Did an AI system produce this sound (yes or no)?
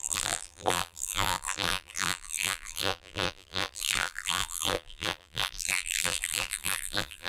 yes